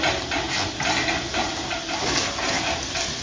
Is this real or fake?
real